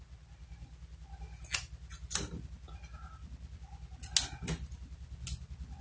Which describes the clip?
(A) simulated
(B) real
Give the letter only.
B